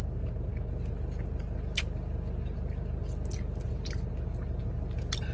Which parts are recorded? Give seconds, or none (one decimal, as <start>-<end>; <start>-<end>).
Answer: 0.0-5.3